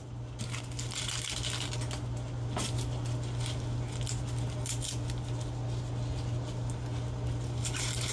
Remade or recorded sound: recorded